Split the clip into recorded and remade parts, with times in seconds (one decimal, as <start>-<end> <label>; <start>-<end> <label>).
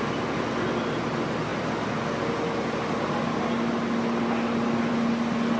0.0-5.6 recorded